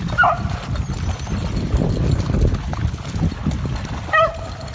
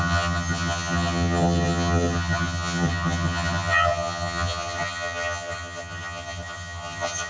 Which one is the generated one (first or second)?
second